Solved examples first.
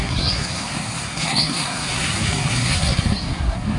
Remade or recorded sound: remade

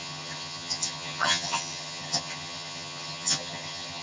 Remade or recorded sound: remade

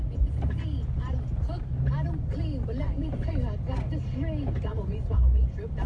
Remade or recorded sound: recorded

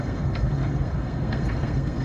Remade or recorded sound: remade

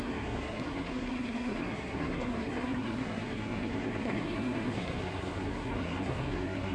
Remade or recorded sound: remade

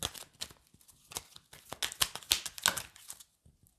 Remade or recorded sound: recorded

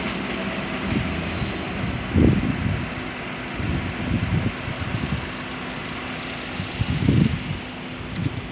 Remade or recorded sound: recorded